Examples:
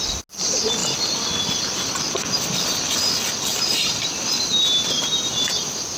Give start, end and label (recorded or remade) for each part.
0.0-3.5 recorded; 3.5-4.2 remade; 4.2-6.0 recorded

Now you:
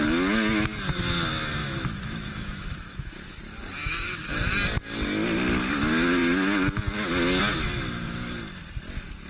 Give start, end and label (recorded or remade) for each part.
0.0-1.6 recorded; 1.6-3.4 remade; 3.4-3.8 recorded; 3.8-4.3 remade; 4.3-9.3 recorded